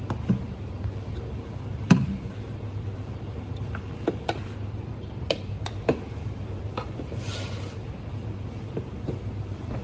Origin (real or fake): fake